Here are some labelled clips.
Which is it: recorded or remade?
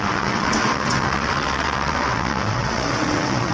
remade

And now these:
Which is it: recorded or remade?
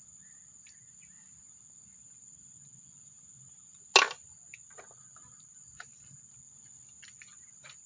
recorded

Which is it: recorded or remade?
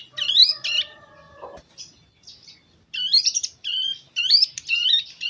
recorded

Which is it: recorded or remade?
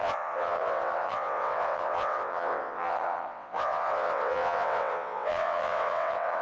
remade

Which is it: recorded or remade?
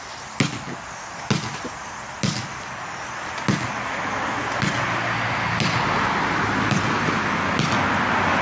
recorded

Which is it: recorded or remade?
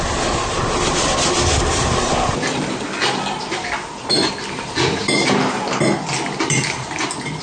recorded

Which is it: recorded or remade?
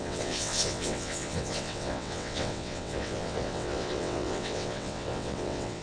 remade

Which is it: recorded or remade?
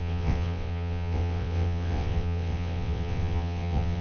remade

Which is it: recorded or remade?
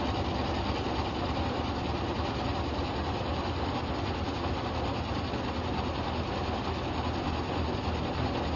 recorded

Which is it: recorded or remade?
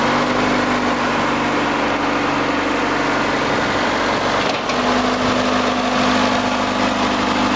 recorded